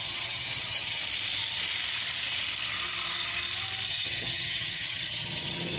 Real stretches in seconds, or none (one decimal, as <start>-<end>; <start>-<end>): 1.0-3.9